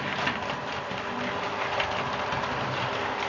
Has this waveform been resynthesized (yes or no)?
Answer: no